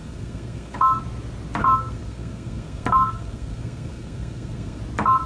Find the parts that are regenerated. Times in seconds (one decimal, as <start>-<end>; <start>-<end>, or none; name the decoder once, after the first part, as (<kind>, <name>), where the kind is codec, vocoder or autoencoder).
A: 0.0-1.0 (codec, SNAC); 1.6-4.8